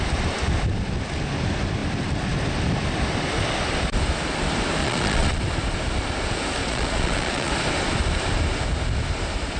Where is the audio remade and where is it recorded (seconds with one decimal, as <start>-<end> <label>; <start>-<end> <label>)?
0.0-4.8 recorded; 4.8-5.4 remade; 5.4-6.6 recorded; 6.6-7.5 remade; 7.5-9.6 recorded